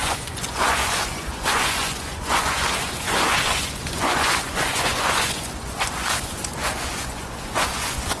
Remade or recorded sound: remade